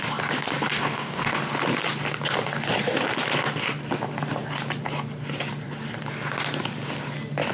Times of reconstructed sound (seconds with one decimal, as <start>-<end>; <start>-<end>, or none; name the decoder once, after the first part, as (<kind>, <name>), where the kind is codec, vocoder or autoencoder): 0.7-1.4 (codec, DAC)